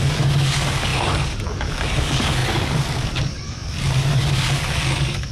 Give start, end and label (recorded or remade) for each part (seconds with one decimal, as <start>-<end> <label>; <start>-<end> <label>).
0.0-5.3 remade